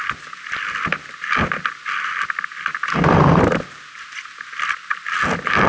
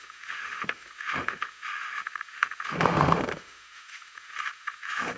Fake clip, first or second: second